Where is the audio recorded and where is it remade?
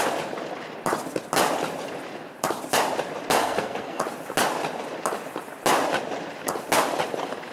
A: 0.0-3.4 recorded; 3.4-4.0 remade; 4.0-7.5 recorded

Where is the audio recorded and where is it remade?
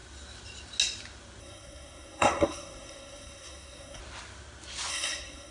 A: 0.0-1.4 recorded; 1.4-4.0 remade; 4.0-4.9 recorded; 4.9-5.5 remade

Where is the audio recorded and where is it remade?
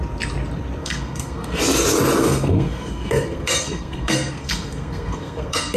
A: 0.0-0.8 recorded; 0.8-1.6 remade; 1.6-2.2 recorded; 2.2-5.8 remade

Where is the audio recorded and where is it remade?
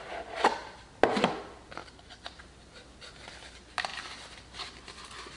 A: 0.0-5.4 recorded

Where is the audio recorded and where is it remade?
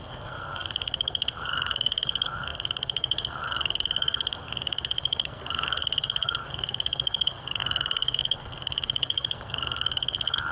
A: 0.0-10.5 remade